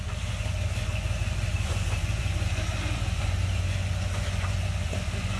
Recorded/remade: remade